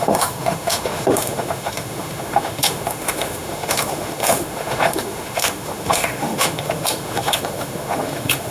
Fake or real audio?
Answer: fake